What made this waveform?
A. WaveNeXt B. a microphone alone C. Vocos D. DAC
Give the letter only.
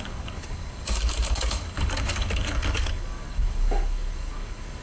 D